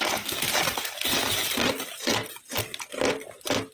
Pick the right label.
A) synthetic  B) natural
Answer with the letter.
B